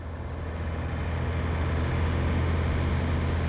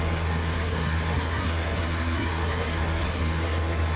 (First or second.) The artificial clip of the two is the second